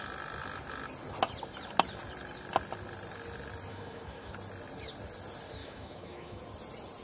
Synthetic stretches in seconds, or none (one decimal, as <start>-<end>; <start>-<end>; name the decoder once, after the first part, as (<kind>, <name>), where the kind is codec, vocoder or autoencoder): 3.7-4.3 (autoencoder, DAC-VAE); 5.6-6.4